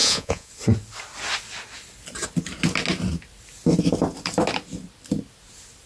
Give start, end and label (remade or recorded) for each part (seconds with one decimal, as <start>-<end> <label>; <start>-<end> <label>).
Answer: 0.0-0.5 remade; 0.5-5.9 recorded